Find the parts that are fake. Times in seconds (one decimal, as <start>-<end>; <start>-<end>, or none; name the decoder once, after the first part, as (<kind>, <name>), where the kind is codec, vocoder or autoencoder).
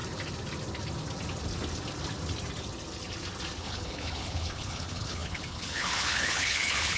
3.6-7.0 (codec, HILCodec)